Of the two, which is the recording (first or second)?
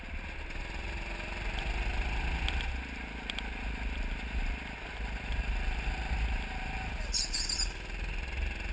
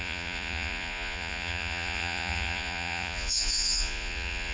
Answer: first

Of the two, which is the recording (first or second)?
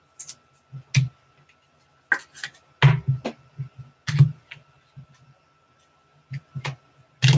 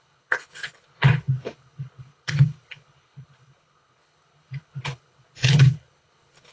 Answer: first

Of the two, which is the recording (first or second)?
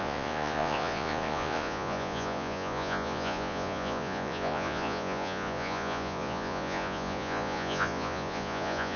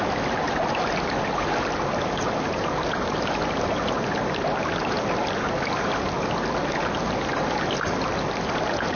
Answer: second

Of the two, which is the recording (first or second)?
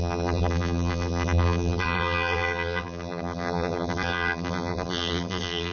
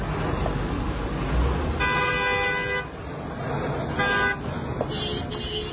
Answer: second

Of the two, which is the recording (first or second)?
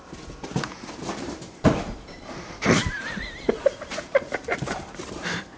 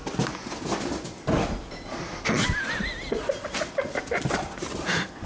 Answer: second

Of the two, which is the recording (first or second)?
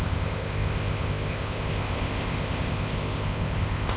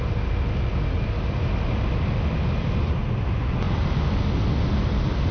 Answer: second